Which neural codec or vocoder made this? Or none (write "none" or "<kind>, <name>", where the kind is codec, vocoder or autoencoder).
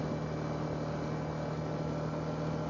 none